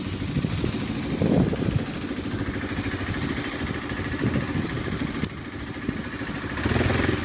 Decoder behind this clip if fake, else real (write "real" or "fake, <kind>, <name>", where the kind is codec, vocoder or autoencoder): real